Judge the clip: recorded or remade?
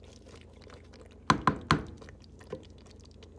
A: recorded